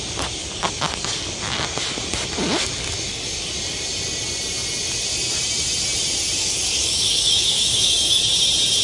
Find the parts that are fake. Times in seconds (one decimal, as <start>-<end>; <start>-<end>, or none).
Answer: 0.4-1.4; 6.4-8.2